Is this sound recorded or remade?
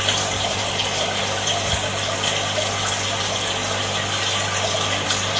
recorded